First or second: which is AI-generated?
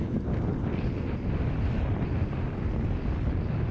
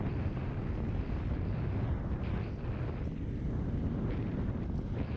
first